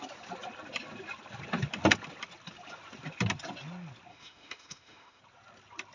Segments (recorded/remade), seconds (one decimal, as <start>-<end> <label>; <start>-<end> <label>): 0.0-4.1 recorded; 4.1-5.2 remade; 5.2-5.9 recorded